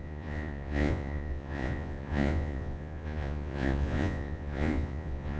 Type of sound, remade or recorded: remade